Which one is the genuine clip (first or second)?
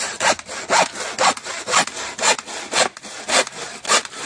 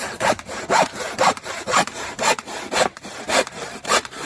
first